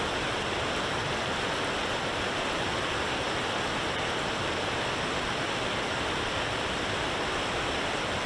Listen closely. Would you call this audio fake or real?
real